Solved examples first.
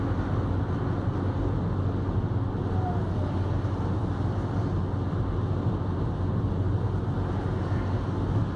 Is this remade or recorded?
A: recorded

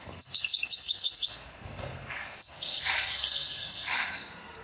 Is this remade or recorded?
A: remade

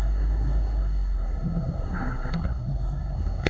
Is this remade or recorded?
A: remade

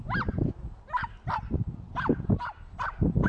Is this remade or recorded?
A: recorded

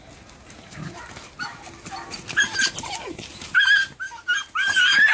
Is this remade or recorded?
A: recorded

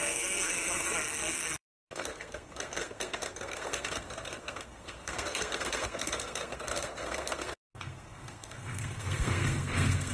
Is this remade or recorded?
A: remade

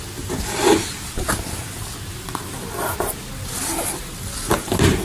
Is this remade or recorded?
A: recorded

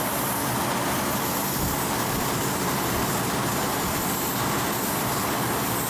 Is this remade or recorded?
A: recorded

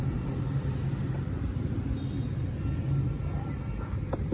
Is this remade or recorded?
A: recorded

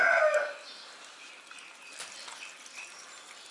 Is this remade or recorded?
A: recorded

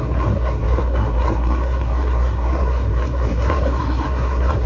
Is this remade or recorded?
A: remade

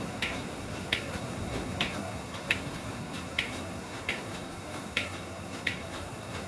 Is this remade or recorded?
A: remade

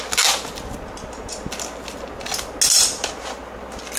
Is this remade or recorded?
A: recorded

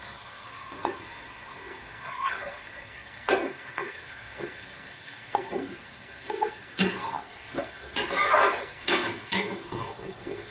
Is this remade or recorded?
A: remade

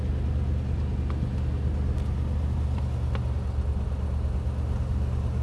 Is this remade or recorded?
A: recorded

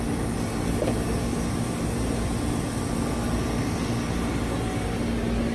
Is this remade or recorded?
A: recorded